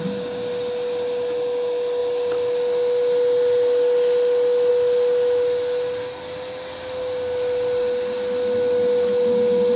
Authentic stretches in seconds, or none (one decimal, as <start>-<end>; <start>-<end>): 0.0-9.8